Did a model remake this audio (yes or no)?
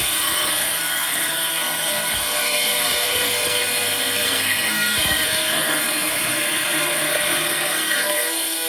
yes